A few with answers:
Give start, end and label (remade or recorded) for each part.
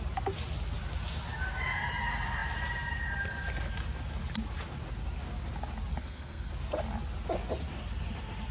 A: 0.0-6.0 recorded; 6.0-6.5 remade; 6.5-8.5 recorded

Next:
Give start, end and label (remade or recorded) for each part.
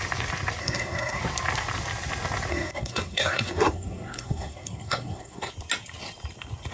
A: 0.0-0.6 recorded; 0.6-1.2 remade; 1.2-2.5 recorded; 2.5-5.5 remade; 5.5-6.7 recorded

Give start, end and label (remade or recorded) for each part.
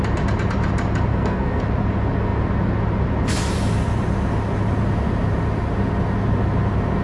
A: 0.0-1.1 recorded; 1.1-1.6 remade; 1.6-7.0 recorded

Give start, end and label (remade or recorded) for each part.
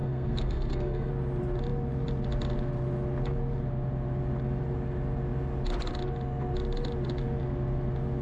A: 0.0-1.1 remade; 1.1-8.2 recorded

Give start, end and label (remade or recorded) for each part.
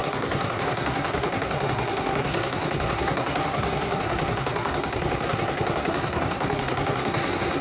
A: 0.0-7.6 remade